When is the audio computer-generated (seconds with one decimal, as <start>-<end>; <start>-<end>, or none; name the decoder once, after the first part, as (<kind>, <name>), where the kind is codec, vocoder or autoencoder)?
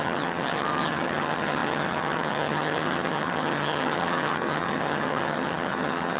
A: 0.0-6.2 (vocoder, HiFi-GAN)